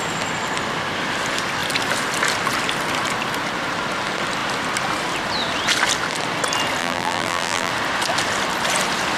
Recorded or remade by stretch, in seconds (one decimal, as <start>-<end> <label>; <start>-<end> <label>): 0.0-6.8 recorded; 6.8-7.7 remade; 7.7-9.2 recorded